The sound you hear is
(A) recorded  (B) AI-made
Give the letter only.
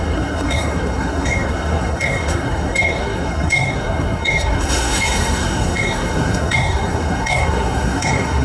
B